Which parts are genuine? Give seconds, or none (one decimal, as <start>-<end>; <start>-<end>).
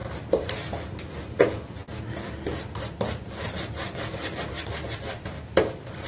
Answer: 1.2-6.1